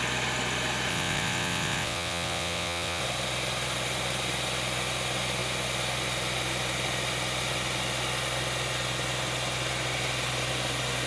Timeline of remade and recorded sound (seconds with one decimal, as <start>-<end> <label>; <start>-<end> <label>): 0.0-0.9 recorded; 0.9-3.0 remade; 3.0-11.1 recorded